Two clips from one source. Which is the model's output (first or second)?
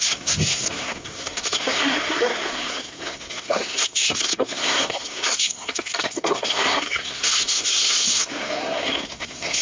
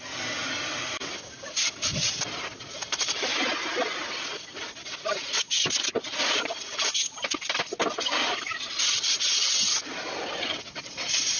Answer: first